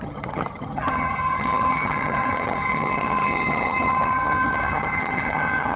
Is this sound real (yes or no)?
no